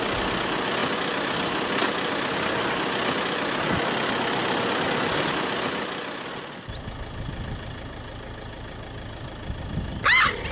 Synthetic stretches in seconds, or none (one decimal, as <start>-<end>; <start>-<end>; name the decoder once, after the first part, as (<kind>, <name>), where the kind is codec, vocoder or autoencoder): none